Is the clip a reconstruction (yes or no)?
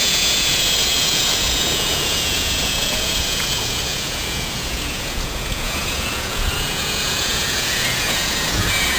yes